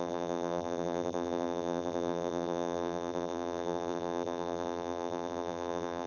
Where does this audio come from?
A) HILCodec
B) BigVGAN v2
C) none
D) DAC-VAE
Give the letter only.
B